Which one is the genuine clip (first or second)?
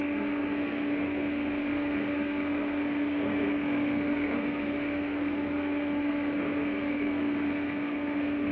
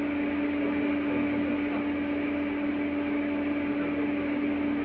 second